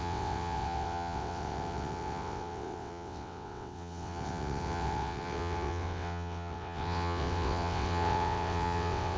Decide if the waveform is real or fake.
fake